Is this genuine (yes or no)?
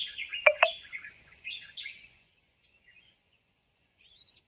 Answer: no